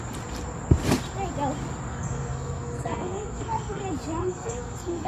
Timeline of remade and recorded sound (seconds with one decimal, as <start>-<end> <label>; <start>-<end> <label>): 0.0-1.9 recorded; 1.9-3.8 remade; 3.8-4.2 recorded; 4.2-5.1 remade